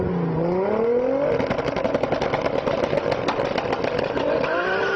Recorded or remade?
recorded